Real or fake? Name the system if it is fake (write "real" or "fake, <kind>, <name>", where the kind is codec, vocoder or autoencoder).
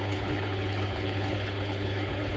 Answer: fake, codec, HILCodec